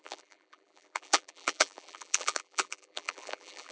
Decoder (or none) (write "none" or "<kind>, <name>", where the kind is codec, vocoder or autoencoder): vocoder, BigVGAN v2